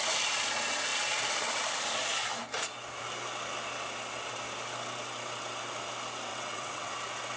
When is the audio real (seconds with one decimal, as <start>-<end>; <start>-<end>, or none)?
0.0-6.3; 6.9-7.4